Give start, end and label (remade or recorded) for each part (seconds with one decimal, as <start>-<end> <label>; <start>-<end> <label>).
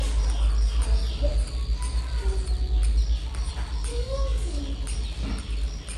0.0-3.9 recorded; 3.9-4.6 remade; 4.6-6.0 recorded